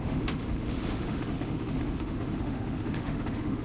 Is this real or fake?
fake